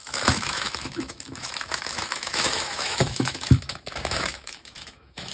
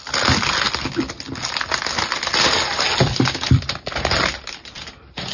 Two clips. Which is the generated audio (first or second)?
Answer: first